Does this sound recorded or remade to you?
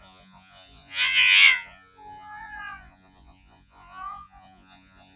remade